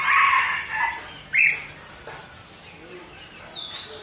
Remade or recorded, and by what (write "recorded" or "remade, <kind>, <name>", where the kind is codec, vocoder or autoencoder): recorded